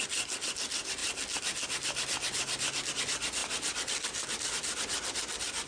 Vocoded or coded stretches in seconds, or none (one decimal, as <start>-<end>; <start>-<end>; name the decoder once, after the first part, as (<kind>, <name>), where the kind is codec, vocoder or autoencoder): none